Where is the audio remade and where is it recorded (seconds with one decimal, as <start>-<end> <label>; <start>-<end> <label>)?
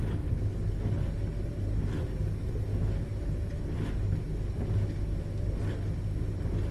0.0-0.7 remade; 0.7-6.7 recorded